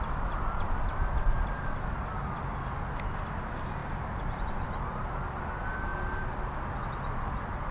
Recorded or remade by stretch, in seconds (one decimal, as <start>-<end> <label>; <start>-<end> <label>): 0.0-3.8 recorded; 3.8-5.4 remade; 5.4-7.7 recorded